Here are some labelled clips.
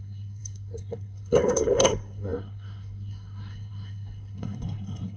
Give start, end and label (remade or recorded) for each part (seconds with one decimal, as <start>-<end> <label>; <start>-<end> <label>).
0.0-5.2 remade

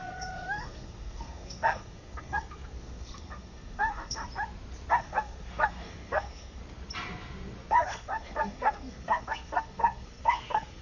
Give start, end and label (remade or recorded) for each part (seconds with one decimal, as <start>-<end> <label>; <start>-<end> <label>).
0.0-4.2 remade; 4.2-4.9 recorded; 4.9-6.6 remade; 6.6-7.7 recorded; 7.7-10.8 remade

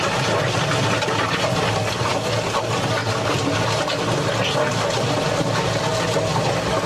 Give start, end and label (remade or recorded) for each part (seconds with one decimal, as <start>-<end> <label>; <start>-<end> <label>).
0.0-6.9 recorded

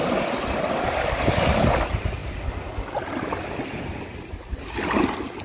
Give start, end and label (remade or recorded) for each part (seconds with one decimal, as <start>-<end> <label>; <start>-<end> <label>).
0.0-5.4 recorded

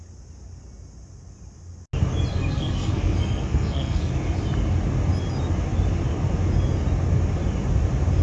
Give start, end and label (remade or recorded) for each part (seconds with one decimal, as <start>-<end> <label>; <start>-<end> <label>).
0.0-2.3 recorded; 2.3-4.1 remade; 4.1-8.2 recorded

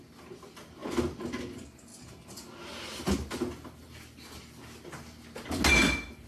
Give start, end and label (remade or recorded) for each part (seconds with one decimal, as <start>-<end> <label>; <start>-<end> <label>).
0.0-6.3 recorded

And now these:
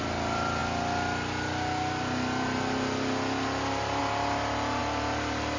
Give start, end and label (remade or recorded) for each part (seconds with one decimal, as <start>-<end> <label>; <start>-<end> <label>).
0.0-5.6 recorded